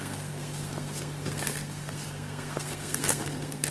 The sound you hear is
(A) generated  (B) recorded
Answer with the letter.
A